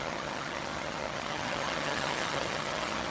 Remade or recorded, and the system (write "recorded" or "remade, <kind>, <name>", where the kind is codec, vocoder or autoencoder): remade, vocoder, HiFi-GAN